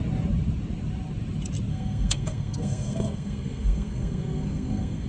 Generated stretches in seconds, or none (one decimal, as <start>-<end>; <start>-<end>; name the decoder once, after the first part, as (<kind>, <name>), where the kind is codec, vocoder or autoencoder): 1.7-5.1 (codec, SNAC)